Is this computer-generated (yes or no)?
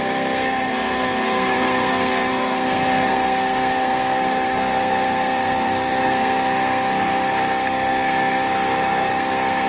yes